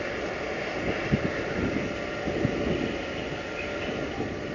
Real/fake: real